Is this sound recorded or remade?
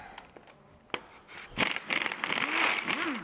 recorded